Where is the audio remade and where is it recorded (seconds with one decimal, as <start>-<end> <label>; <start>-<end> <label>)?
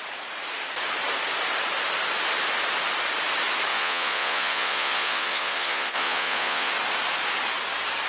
0.0-3.7 recorded; 3.7-6.7 remade; 6.7-8.1 recorded